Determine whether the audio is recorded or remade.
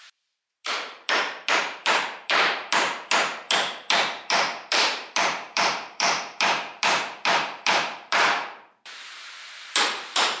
remade